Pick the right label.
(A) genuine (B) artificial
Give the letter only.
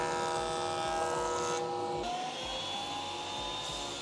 A